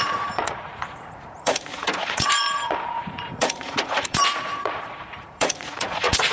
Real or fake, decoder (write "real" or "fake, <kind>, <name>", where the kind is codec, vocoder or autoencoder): fake, vocoder, Vocos